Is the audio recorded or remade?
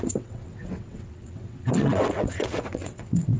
remade